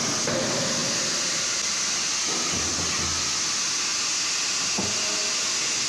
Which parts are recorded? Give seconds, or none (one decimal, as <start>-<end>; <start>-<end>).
0.0-5.9